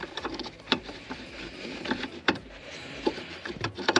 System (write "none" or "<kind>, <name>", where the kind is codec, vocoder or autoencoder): vocoder, BigVGAN v2